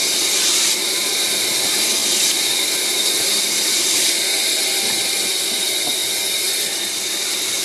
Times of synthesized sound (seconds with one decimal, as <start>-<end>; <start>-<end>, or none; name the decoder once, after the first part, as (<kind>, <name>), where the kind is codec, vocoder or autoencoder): 2.0-5.1 (vocoder, BigVGAN v2)